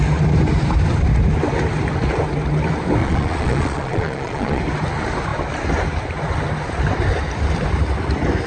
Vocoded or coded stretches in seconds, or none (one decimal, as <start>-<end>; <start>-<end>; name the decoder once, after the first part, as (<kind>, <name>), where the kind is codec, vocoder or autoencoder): 3.0-4.6 (vocoder, Vocos)